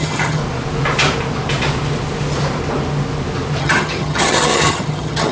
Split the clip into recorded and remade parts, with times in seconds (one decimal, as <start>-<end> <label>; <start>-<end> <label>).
0.0-0.4 remade; 0.4-3.6 recorded; 3.6-5.3 remade